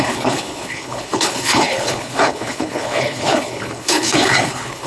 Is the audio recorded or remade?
remade